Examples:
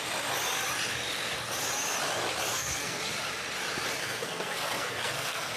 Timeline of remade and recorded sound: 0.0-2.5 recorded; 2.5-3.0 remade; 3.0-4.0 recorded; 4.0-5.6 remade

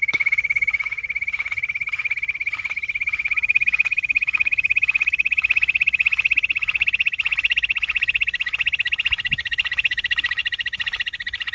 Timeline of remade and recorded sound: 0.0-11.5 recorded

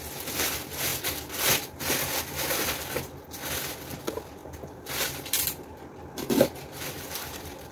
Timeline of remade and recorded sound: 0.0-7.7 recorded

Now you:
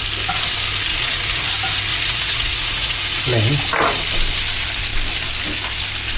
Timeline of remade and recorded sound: 0.0-0.9 recorded; 0.9-1.5 remade; 1.5-1.9 recorded; 1.9-3.2 remade; 3.2-6.2 recorded

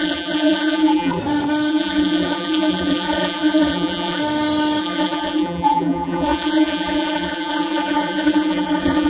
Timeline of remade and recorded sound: 0.0-1.2 remade; 1.2-1.7 recorded; 1.7-4.2 remade; 4.2-4.8 recorded; 4.8-9.1 remade

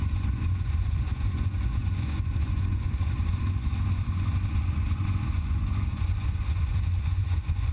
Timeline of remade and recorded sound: 0.0-7.7 remade

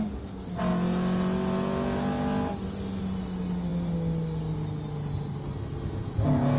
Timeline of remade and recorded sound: 0.0-6.6 recorded